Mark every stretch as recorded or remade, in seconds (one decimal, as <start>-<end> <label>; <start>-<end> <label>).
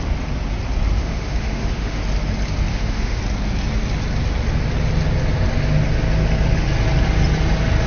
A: 0.0-1.0 recorded; 1.0-2.0 remade; 2.0-2.7 recorded; 2.7-3.2 remade; 3.2-7.9 recorded